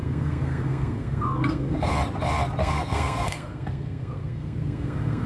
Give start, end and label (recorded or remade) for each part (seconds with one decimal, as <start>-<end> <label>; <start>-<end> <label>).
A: 0.0-1.9 remade; 1.9-2.6 recorded; 2.6-5.3 remade

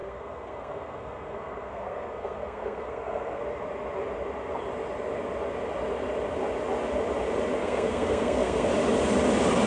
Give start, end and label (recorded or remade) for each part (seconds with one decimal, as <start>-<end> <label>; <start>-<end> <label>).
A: 0.0-3.4 remade; 3.4-7.6 recorded; 7.6-8.7 remade; 8.7-9.7 recorded

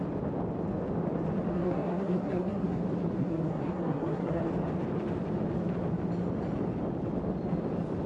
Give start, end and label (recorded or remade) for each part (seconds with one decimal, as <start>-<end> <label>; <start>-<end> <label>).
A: 0.0-1.5 recorded; 1.5-2.8 remade; 2.8-3.2 recorded; 3.2-4.4 remade; 4.4-8.1 recorded

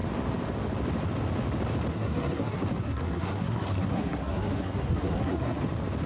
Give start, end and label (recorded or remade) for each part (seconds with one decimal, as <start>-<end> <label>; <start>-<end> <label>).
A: 0.0-1.9 recorded; 1.9-5.6 remade; 5.6-6.1 recorded

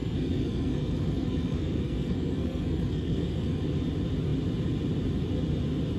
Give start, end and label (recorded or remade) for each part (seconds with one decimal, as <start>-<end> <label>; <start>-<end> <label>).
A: 0.0-3.6 remade; 3.6-6.0 recorded

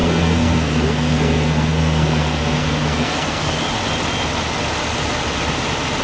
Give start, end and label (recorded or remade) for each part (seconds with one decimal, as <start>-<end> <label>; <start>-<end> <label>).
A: 0.0-3.6 remade; 3.6-6.0 recorded

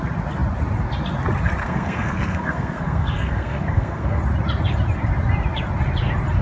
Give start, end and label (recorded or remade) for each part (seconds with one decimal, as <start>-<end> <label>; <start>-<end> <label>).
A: 0.0-1.6 recorded; 1.6-4.2 remade; 4.2-6.4 recorded

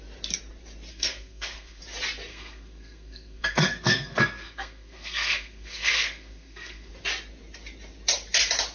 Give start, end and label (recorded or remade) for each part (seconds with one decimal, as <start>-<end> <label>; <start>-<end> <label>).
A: 0.0-0.9 recorded; 0.9-1.8 remade; 1.8-2.3 recorded; 2.3-6.9 remade; 6.9-8.7 recorded